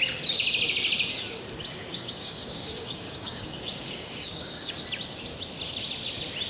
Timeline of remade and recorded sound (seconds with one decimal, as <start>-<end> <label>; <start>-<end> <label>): 0.0-1.7 recorded; 1.7-4.7 remade; 4.7-6.5 recorded